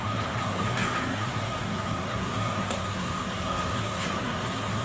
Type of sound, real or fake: fake